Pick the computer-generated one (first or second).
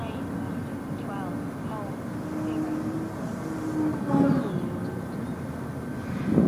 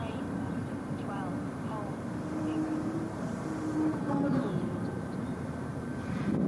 second